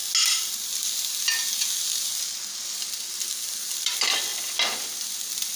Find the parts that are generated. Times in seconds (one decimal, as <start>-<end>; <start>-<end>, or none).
none